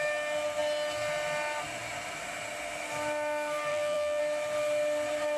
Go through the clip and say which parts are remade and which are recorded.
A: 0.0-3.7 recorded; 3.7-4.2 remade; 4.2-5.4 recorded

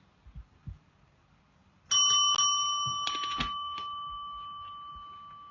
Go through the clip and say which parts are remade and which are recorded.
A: 0.0-5.5 recorded

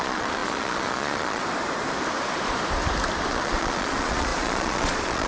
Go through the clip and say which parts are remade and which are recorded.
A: 0.0-1.4 remade; 1.4-3.3 recorded; 3.3-5.3 remade

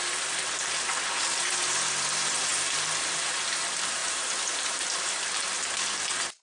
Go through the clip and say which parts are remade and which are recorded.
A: 0.0-4.0 recorded; 4.0-5.2 remade; 5.2-6.4 recorded

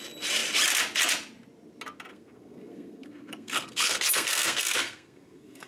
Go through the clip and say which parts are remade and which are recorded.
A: 0.0-2.1 recorded; 2.1-5.7 remade

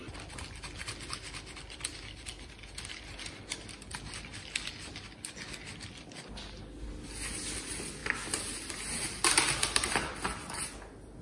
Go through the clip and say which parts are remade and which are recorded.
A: 0.0-11.2 recorded